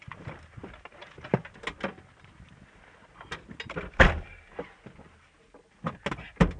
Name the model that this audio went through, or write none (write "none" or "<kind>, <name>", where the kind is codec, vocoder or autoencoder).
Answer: none